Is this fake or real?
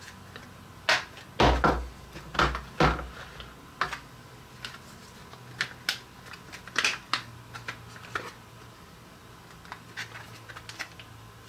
real